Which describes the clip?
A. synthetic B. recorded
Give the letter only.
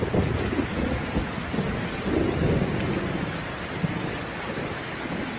B